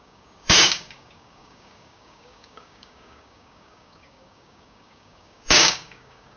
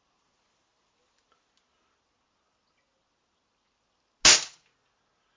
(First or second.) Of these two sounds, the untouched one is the second